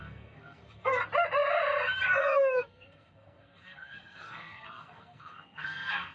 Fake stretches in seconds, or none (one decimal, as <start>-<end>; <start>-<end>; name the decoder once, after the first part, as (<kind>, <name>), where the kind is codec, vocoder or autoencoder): 0.0-1.0 (codec, SNAC); 2.2-6.1